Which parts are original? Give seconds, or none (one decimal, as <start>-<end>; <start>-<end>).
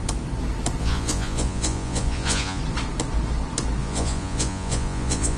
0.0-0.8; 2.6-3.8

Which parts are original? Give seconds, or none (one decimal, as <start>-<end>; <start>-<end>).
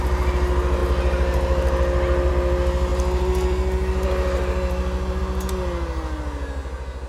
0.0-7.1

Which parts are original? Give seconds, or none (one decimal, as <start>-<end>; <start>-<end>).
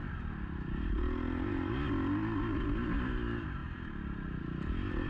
0.0-5.1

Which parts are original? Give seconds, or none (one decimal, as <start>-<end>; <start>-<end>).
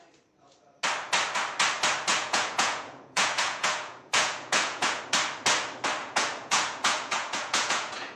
0.0-2.1; 5.0-6.0